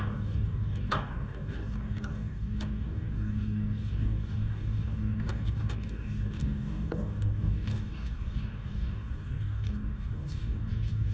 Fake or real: fake